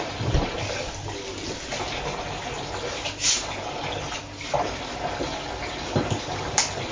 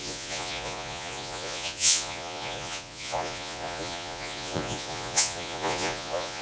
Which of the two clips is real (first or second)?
first